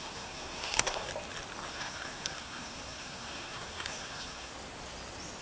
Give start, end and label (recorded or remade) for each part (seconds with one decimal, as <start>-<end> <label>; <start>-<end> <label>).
0.0-1.1 remade; 1.1-1.7 recorded; 1.7-4.5 remade; 4.5-5.4 recorded